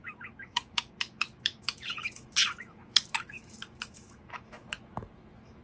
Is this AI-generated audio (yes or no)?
yes